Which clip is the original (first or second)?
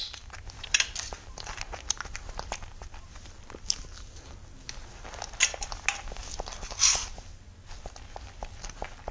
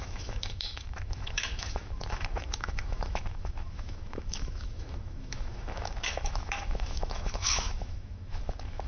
first